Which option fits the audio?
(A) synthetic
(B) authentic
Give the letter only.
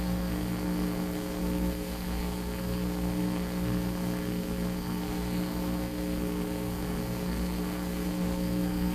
A